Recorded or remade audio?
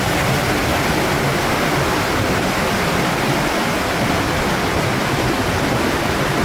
recorded